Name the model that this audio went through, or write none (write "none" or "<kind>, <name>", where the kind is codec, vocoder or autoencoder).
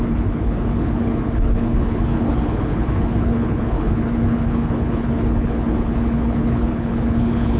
codec, HILCodec